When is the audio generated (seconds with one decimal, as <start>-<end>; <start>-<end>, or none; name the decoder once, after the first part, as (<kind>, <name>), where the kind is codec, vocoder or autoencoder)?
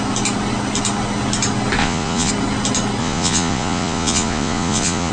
1.8-2.3 (vocoder, Vocos); 3.0-5.1